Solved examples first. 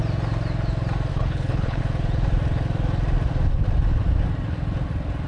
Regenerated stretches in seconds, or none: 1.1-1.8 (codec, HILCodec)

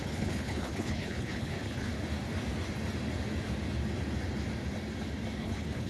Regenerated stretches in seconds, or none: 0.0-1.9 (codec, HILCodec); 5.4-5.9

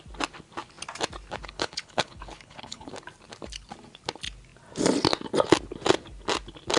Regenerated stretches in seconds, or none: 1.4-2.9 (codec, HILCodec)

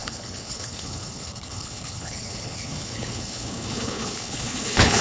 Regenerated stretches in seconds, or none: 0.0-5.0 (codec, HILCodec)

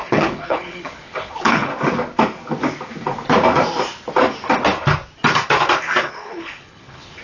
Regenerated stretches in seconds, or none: 0.0-1.7 (codec, HILCodec); 6.0-7.2

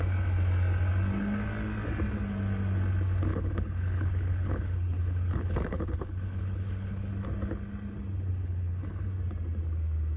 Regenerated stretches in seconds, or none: 3.3-7.1 (codec, HILCodec); 8.3-9.1